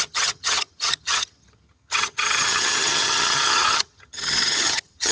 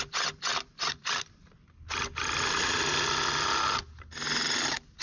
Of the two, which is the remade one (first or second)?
first